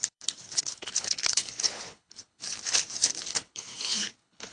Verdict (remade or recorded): remade